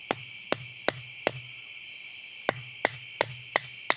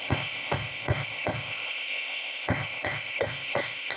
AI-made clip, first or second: second